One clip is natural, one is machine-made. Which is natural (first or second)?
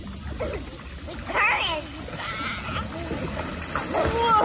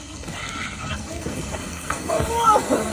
first